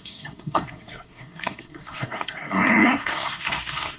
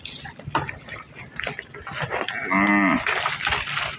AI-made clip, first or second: first